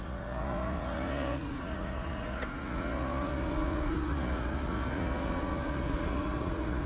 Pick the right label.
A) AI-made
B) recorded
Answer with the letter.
A